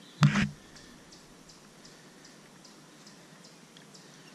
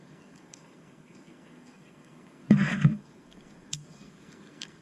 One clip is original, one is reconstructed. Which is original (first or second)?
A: first